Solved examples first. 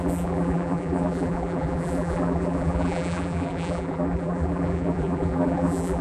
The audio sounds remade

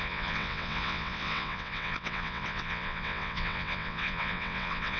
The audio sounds remade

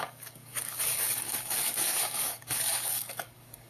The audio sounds remade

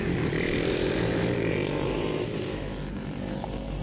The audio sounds remade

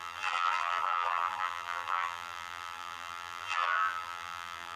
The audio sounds remade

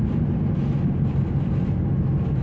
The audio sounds recorded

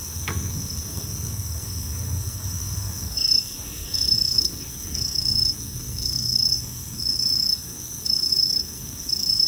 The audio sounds remade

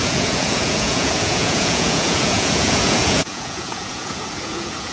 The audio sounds remade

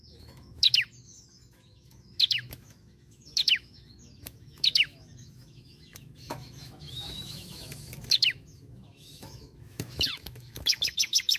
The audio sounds remade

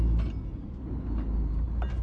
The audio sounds recorded